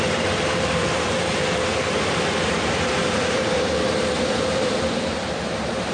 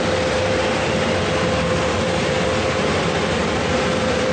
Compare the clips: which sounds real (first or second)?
second